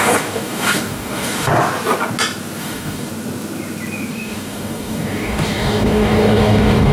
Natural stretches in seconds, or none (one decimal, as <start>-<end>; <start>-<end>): 1.5-2.6; 3.1-4.1